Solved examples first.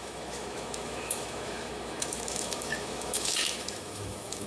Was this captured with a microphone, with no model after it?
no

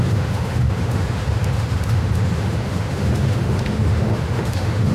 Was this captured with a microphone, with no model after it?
no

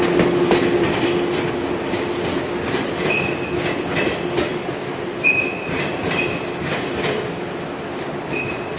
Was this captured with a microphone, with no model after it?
yes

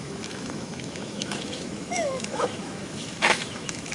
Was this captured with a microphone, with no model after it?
no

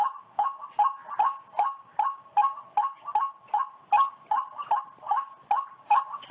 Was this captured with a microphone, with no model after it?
yes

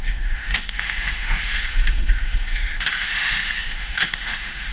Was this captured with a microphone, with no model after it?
no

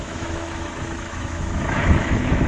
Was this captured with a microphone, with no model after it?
no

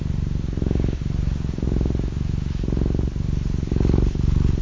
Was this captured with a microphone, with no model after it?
yes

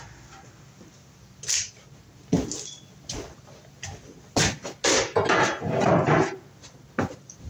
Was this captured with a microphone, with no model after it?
yes